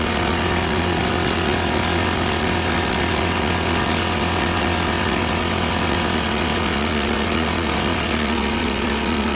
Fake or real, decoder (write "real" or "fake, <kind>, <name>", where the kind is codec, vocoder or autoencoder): fake, vocoder, WaveNeXt